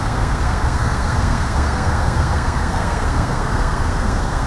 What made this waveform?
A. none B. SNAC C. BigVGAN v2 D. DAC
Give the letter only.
B